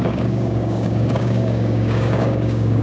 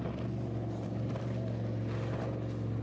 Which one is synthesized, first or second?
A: first